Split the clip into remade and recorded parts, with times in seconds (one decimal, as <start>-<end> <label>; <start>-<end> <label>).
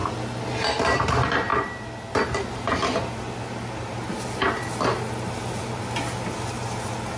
0.0-7.2 recorded